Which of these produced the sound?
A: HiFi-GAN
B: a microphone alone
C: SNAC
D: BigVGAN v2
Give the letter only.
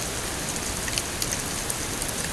B